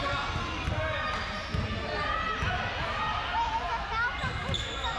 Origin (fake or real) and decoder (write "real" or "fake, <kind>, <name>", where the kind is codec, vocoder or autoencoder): real